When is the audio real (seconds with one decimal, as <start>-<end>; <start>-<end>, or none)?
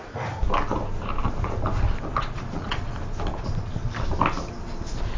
0.0-2.1; 2.8-5.2